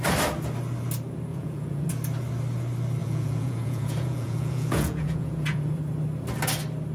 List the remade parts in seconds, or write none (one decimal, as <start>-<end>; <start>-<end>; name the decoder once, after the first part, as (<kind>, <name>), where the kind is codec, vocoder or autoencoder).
1.3-1.9 (vocoder, Vocos); 3.0-5.8